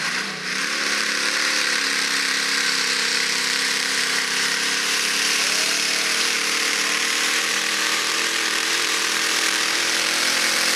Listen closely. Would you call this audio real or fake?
fake